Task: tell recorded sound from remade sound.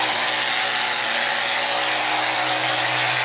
recorded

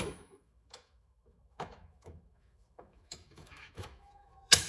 remade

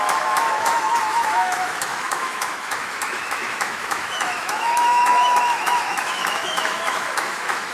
remade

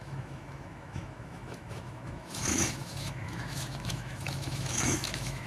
remade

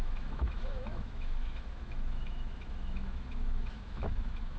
remade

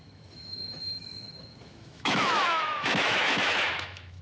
remade